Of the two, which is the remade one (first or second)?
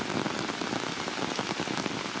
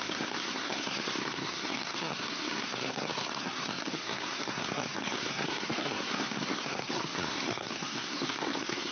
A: second